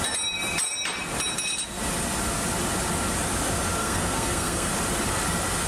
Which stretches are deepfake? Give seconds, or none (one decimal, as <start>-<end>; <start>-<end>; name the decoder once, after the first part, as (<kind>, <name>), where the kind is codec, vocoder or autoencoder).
3.8-4.7 (codec, SNAC)